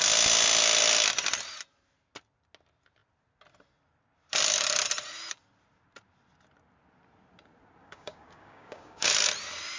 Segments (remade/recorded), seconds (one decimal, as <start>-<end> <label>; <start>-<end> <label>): 0.0-7.8 recorded; 7.8-9.1 remade; 9.1-9.8 recorded